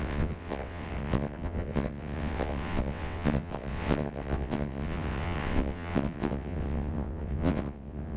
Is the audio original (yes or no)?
no